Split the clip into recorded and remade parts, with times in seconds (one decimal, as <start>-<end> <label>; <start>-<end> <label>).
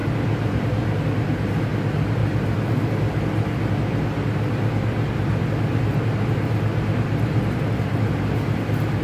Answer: 0.0-9.0 recorded